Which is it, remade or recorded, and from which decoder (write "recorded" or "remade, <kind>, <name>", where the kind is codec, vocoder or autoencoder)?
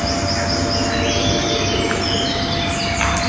recorded